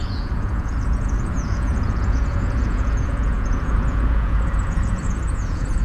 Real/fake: fake